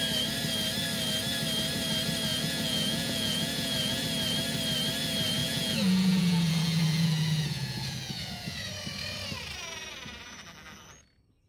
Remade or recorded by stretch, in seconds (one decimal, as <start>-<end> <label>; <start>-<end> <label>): 0.0-2.3 recorded; 2.3-4.0 remade; 4.0-5.4 recorded; 5.4-8.7 remade; 8.7-11.5 recorded

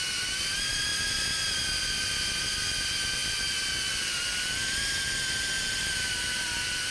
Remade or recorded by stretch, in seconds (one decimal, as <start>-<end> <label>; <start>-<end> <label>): 0.0-6.9 recorded

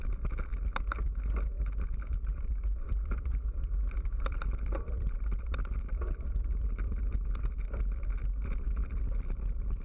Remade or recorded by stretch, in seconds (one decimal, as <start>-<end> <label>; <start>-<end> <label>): 0.0-0.5 remade; 0.5-2.2 recorded; 2.2-9.8 remade